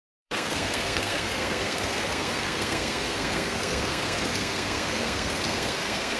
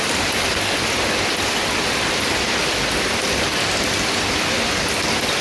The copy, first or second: first